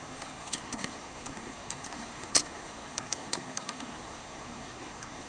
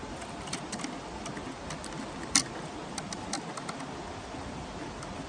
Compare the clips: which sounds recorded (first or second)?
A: second